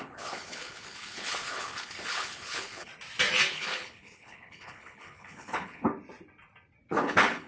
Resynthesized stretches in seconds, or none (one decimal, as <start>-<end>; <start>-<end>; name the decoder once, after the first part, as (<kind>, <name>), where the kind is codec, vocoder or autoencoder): 0.0-2.9 (codec, HILCodec); 3.5-5.9; 6.9-7.5